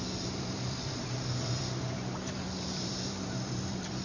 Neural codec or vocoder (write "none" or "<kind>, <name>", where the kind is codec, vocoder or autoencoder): vocoder, BigVGAN v2